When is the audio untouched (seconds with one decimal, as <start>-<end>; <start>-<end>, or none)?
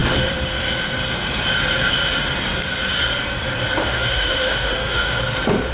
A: 0.0-3.8; 5.2-5.7